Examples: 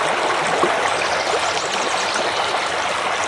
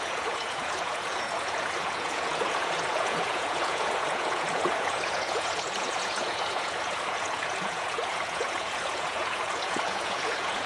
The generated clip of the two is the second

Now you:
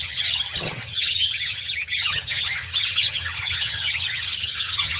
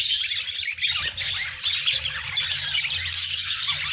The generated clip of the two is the first